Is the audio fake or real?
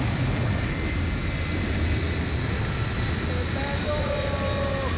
real